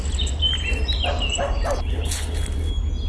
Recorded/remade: recorded